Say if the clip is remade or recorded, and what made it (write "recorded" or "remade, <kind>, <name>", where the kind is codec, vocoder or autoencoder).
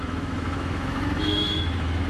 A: remade, autoencoder, DAC-VAE